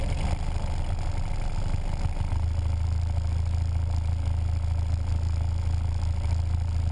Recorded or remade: recorded